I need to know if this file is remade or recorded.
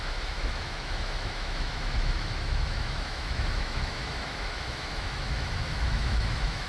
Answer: remade